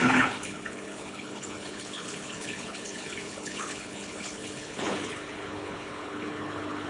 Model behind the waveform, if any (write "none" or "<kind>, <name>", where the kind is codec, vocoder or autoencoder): codec, HILCodec